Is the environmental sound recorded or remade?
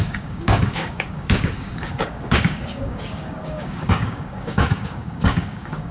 remade